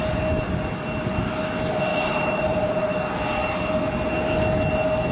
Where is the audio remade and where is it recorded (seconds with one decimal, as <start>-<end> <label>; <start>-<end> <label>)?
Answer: 0.0-1.9 recorded; 1.9-3.0 remade; 3.0-5.1 recorded